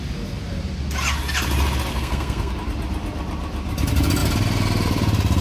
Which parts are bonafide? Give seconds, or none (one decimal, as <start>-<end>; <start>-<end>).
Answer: 0.0-1.9; 2.5-5.4